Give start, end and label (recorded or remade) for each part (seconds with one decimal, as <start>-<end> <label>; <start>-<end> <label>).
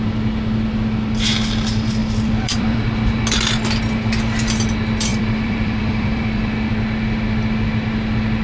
0.0-2.0 recorded; 2.0-3.2 remade; 3.2-5.1 recorded; 5.1-6.7 remade; 6.7-8.4 recorded